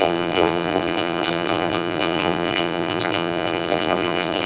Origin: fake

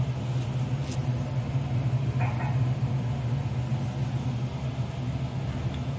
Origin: real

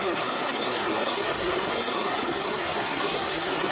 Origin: fake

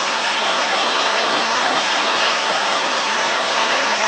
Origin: fake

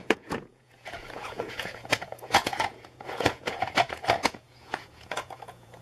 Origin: fake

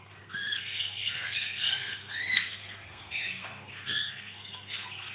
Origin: fake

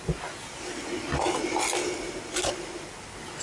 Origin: real